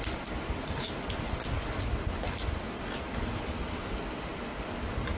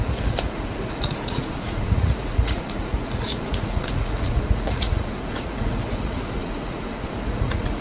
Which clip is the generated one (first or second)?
second